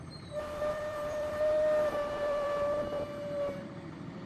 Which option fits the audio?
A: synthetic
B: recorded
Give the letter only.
A